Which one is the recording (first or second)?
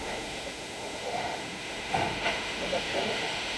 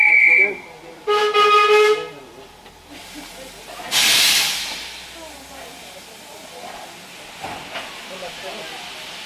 second